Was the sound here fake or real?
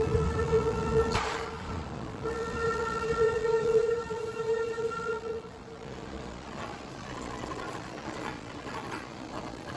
fake